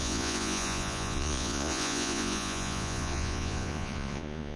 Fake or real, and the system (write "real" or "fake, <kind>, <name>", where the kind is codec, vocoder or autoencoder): fake, vocoder, Vocos